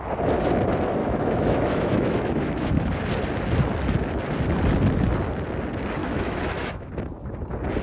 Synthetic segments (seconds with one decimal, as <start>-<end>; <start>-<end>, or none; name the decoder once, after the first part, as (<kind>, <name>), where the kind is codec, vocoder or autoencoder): 1.0-2.7 (autoencoder, DAC-VAE); 6.0-6.9